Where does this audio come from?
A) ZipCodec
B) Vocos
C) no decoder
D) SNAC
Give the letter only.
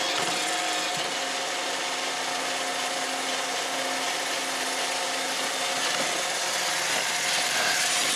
C